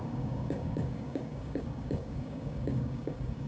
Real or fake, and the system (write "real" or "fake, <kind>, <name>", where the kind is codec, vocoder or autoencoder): fake, codec, DAC